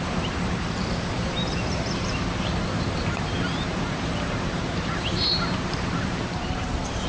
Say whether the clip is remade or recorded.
remade